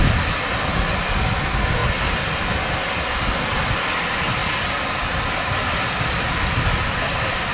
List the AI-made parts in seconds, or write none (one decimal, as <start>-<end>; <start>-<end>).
none